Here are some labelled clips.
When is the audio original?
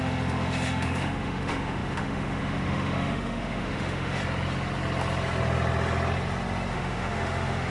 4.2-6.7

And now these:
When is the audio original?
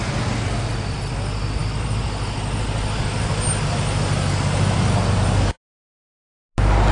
0.0-6.9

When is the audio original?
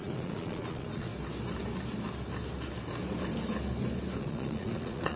1.1-4.2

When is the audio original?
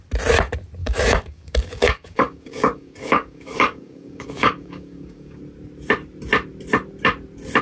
0.0-0.8; 5.4-7.6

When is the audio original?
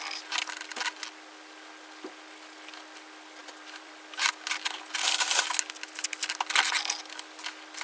0.0-3.4; 3.9-7.8